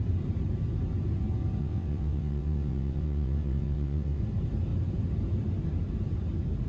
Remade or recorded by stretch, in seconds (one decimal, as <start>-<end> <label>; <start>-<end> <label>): 0.0-1.6 recorded; 1.6-4.2 remade; 4.2-6.7 recorded